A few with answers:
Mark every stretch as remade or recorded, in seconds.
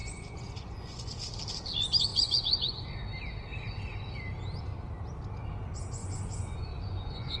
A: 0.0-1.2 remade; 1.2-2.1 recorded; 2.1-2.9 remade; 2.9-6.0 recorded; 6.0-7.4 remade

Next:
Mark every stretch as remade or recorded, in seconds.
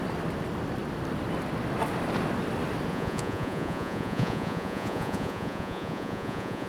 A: 0.0-2.9 recorded; 2.9-6.7 remade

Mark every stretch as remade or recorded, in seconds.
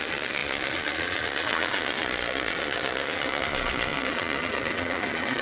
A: 0.0-5.4 remade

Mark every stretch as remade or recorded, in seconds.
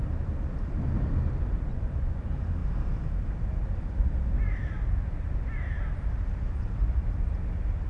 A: 0.0-1.7 recorded; 1.7-2.2 remade; 2.2-7.9 recorded